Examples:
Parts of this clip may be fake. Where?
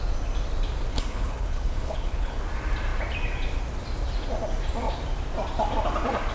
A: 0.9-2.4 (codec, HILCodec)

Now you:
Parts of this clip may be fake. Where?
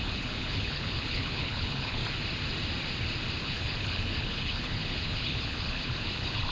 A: 0.0-2.0 (codec, HILCodec); 3.4-6.5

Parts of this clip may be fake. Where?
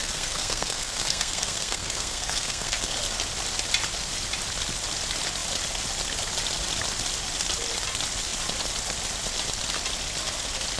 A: 0.0-2.9 (codec, SNAC)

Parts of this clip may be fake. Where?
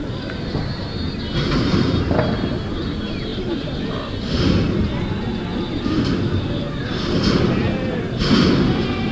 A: none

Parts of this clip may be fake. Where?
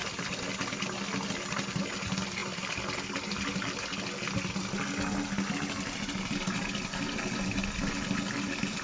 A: none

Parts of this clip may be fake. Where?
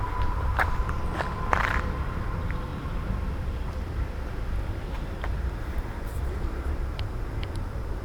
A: 0.0-1.1 (vocoder, BigVGAN v2); 2.2-2.7; 6.1-8.0